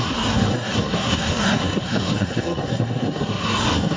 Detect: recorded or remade remade